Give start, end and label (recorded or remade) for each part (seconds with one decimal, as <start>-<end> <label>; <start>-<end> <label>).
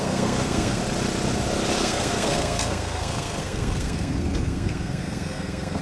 0.0-0.8 remade; 0.8-1.8 recorded; 1.8-5.8 remade